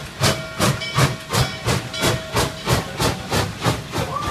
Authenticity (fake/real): real